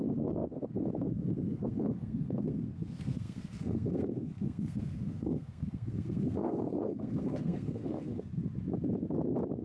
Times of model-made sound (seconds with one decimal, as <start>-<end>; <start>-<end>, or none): 0.0-8.4